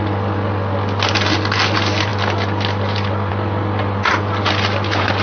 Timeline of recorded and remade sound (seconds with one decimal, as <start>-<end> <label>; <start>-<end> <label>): 0.0-5.2 recorded